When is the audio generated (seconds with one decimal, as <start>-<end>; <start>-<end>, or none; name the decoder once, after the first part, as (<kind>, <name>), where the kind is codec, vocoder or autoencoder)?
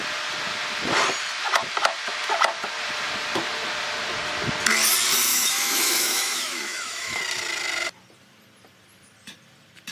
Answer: 5.3-7.2 (autoencoder, DAC-VAE)